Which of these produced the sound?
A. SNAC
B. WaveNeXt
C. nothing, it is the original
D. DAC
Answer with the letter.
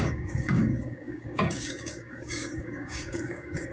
D